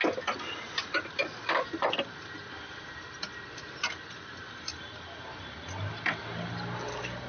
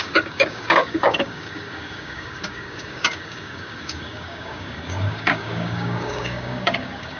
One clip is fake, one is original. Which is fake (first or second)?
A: second